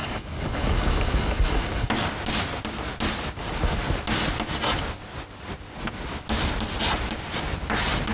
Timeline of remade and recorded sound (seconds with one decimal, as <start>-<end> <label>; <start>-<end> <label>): 0.0-1.9 remade; 1.9-8.1 recorded